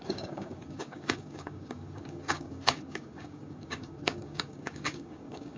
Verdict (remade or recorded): remade